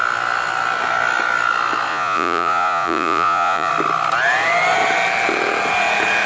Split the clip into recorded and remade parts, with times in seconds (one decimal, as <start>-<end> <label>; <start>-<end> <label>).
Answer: 0.0-1.9 recorded; 1.9-3.7 remade; 3.7-6.3 recorded